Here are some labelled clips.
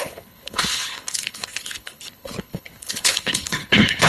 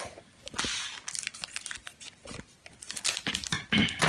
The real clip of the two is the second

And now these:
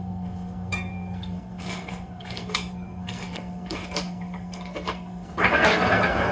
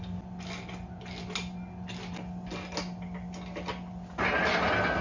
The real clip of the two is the second